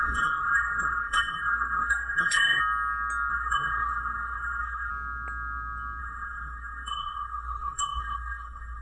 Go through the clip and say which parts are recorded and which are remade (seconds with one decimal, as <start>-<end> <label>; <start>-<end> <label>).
0.0-2.6 remade; 2.6-3.3 recorded; 3.3-4.9 remade; 4.9-6.0 recorded; 6.0-8.8 remade